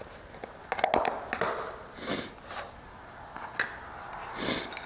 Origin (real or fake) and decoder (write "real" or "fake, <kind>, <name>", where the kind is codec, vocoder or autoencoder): real